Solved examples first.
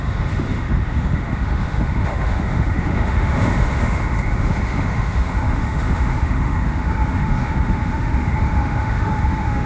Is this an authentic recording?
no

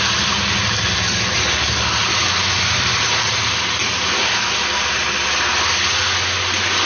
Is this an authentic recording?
yes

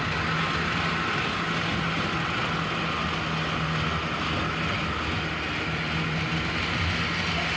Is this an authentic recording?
yes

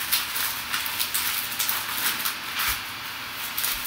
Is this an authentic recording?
yes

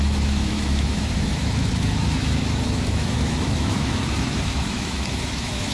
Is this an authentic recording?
no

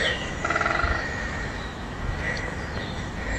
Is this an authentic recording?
no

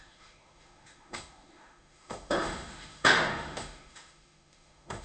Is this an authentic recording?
no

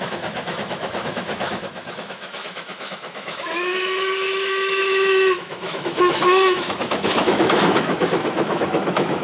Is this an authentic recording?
no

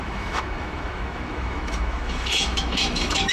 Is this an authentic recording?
no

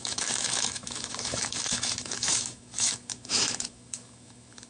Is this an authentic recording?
no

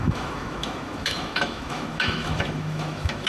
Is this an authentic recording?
no